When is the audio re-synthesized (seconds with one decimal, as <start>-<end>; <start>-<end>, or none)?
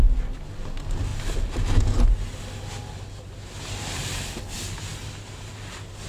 none